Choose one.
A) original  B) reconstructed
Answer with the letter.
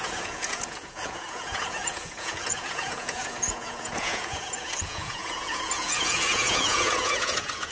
B